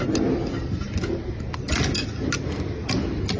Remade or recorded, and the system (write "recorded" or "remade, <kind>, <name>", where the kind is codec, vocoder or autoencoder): recorded